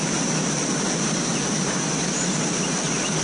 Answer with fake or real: real